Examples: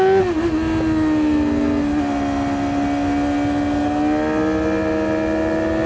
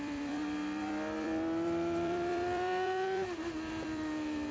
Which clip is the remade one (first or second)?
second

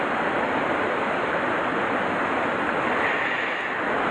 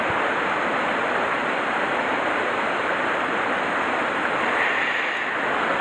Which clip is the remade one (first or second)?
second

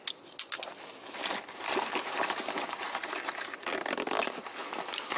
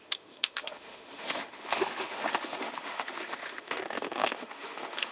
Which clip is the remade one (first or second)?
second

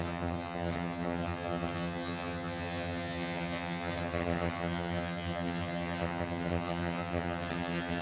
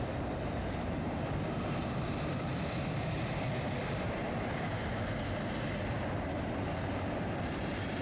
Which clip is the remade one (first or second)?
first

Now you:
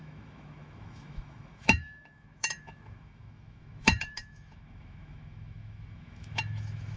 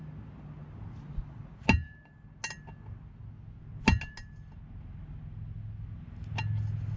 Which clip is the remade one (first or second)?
first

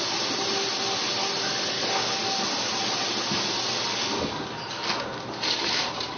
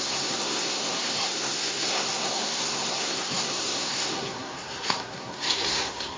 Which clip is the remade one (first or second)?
second